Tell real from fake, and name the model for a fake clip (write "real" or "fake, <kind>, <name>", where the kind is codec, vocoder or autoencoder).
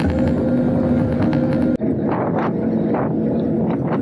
real